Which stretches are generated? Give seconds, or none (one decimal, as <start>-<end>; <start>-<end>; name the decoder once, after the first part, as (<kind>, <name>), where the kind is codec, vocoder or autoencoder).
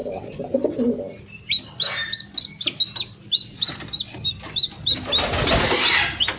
none